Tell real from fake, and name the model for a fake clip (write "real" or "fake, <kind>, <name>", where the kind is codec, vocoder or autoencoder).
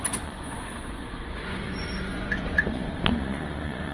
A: fake, vocoder, Vocos